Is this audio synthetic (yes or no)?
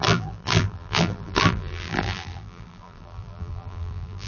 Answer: yes